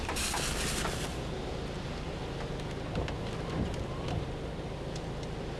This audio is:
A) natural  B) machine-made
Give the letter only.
A